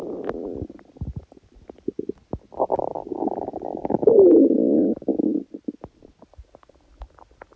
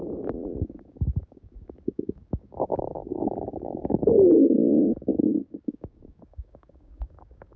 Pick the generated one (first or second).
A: second